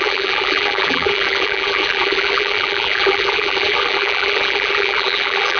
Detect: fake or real fake